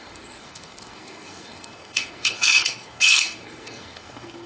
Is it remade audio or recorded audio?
remade